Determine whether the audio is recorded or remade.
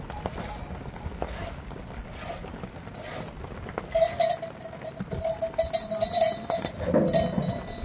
recorded